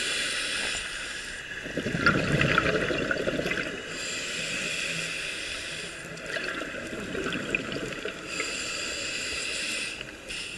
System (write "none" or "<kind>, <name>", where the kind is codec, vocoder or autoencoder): none